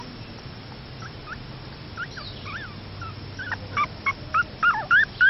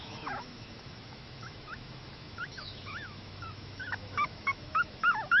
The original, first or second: first